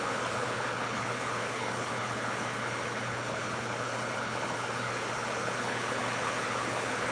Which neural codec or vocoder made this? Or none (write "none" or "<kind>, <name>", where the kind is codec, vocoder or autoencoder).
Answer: codec, HILCodec